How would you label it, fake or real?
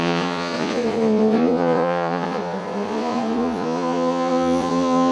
fake